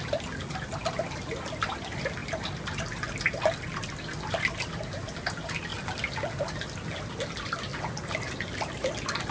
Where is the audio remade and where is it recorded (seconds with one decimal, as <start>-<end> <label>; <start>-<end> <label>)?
0.0-9.3 recorded